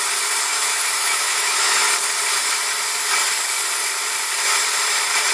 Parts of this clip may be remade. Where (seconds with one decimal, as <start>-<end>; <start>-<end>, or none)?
0.5-1.9